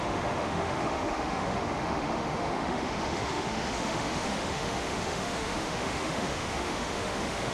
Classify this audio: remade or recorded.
remade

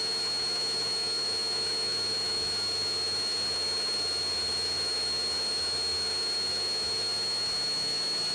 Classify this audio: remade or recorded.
remade